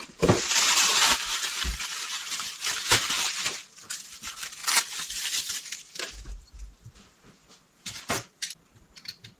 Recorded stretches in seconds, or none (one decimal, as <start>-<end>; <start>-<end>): none